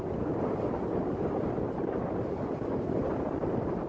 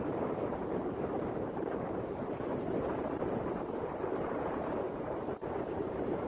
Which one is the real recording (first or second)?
first